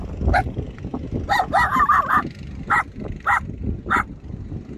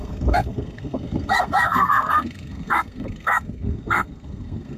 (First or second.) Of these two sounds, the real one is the first